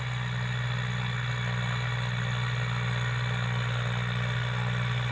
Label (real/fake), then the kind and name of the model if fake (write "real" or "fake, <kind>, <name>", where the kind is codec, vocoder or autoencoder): real